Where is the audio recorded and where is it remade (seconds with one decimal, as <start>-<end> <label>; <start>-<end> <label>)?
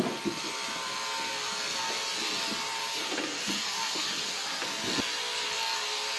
0.0-2.8 recorded; 2.8-4.6 remade; 4.6-6.2 recorded